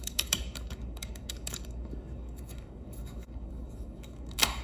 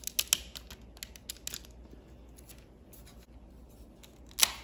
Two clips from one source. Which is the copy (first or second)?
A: first